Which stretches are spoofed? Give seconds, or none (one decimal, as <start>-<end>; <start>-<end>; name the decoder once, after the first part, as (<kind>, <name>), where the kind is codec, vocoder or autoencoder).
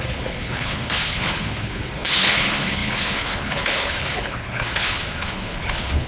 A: 0.0-6.1 (codec, HILCodec)